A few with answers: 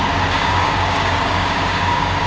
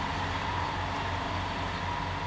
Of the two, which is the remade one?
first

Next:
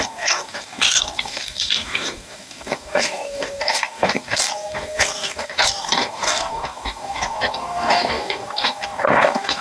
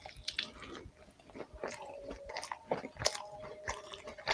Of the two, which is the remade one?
first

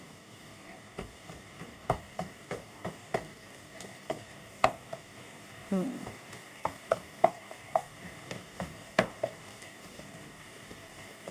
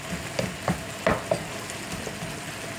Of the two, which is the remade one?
first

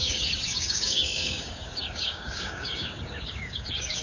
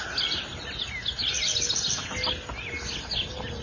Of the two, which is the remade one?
first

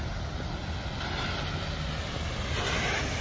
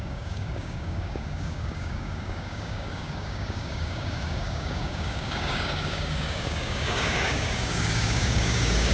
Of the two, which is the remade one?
second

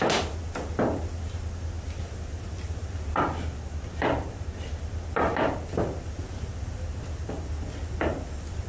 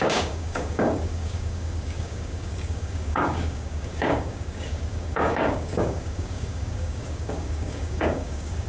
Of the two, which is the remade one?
second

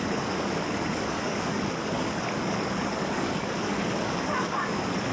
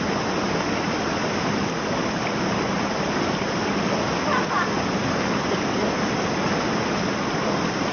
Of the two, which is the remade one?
first